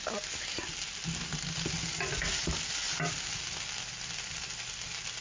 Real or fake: real